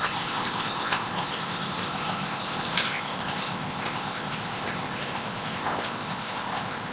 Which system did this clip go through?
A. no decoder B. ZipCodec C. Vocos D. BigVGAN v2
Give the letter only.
B